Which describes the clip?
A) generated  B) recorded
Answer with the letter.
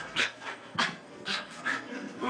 A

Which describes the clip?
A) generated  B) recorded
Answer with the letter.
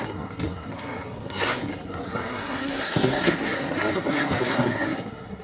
A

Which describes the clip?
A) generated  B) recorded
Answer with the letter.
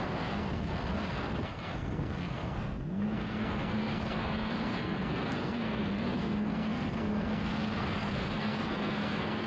A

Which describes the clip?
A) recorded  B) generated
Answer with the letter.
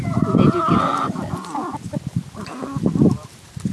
A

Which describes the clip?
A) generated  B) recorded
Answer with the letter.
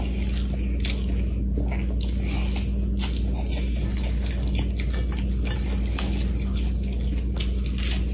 B